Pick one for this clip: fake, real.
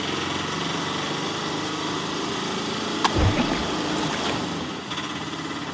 real